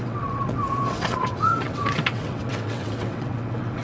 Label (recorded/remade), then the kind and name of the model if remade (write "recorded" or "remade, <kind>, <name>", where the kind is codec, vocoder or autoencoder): remade, vocoder, WaveNeXt